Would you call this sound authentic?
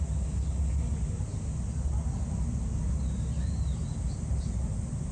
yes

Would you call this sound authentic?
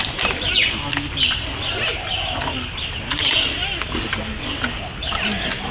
yes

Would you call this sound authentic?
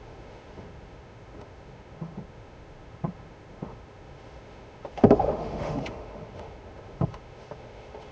no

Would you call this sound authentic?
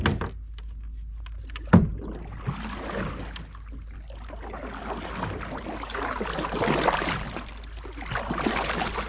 yes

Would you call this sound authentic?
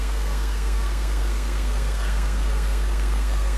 no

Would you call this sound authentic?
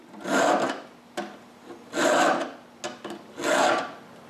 yes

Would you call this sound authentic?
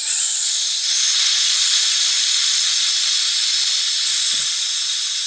yes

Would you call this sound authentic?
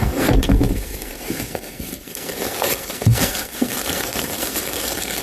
no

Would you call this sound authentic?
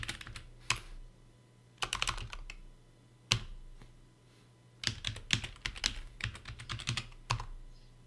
yes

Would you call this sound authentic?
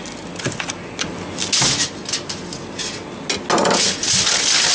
yes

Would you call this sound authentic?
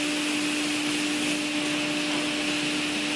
yes